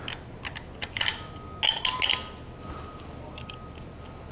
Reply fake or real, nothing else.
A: real